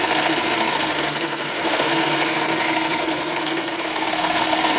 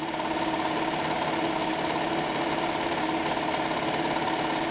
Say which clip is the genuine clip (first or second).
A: second